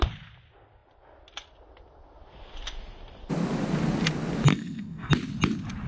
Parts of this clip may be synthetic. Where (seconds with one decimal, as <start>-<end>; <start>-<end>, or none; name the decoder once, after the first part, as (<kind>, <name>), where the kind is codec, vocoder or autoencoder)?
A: 4.5-5.1 (codec, SNAC)